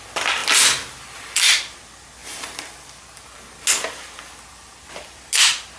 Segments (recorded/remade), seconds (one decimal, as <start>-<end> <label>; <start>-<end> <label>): 0.0-5.8 recorded